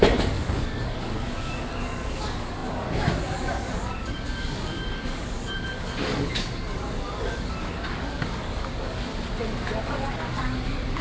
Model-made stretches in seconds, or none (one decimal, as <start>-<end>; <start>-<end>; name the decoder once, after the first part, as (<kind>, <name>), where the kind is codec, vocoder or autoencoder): 0.0-9.1 (codec, DAC); 9.8-11.0